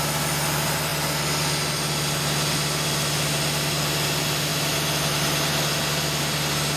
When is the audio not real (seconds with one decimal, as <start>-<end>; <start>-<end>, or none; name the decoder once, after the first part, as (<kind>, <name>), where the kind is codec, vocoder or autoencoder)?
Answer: none